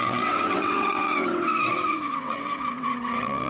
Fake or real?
fake